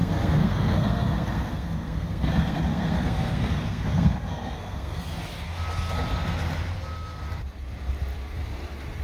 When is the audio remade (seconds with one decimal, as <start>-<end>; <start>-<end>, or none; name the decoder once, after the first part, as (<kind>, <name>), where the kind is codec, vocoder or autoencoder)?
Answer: 0.0-5.0 (codec, SNAC)